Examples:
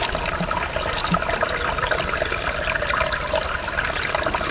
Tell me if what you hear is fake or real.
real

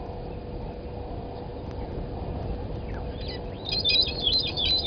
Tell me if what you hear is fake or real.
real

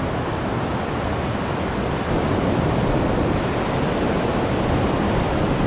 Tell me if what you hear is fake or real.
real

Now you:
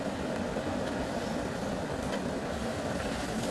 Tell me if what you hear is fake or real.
real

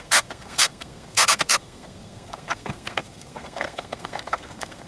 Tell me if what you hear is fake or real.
fake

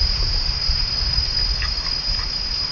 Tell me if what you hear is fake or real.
real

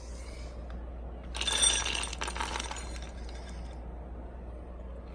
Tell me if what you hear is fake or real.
real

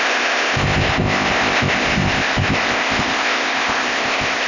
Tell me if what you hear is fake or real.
fake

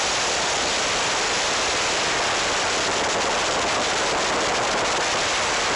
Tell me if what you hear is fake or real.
real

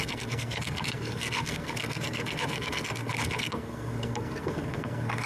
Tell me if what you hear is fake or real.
fake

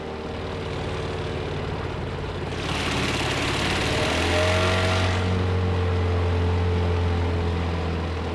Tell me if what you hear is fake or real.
real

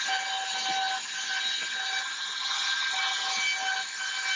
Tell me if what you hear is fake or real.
real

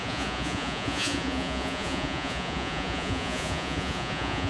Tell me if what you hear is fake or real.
fake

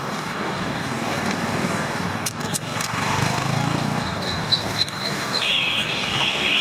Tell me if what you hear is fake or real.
fake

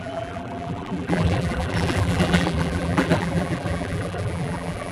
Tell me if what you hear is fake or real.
fake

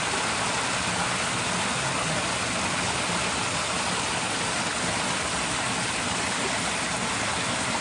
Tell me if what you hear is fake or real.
real